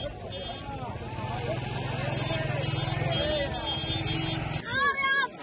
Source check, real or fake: real